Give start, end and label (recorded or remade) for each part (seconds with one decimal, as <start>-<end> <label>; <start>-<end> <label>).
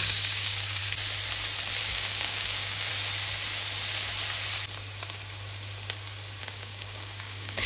0.0-0.8 remade; 0.8-1.8 recorded; 1.8-2.9 remade; 2.9-6.4 recorded; 6.4-7.7 remade